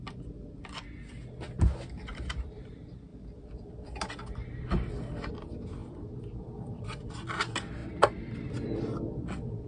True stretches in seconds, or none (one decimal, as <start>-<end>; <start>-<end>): 0.0-2.1; 2.7-3.1; 3.7-5.8; 7.1-7.8; 8.3-9.7